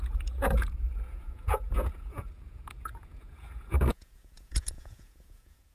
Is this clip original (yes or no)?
no